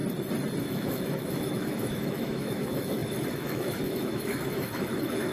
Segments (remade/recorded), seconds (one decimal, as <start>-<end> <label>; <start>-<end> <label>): 0.0-0.6 recorded; 0.6-5.3 remade